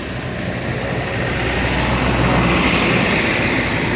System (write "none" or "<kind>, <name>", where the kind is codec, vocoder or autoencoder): none